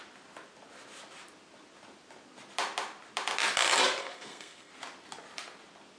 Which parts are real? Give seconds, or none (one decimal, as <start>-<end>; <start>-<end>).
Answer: 0.0-4.0; 4.7-6.0